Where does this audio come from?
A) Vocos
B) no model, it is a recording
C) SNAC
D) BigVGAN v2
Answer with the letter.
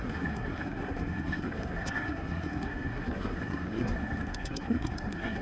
C